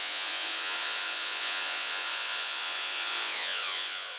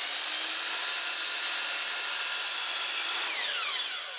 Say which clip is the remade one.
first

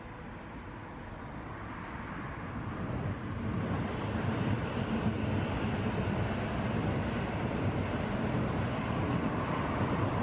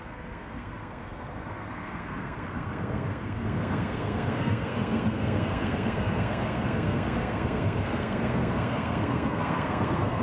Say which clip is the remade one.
second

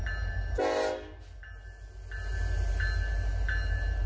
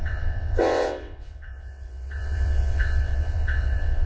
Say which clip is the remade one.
second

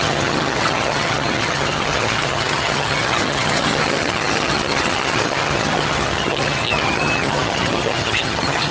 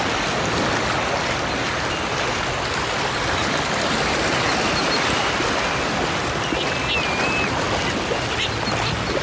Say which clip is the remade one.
first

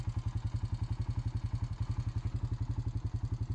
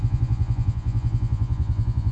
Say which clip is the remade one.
second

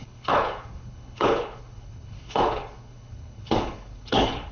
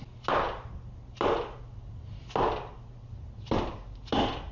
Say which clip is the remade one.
first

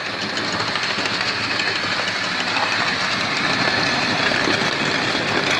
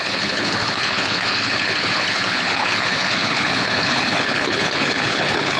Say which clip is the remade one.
second